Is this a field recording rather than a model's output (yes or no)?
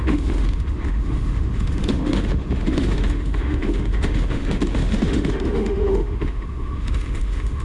no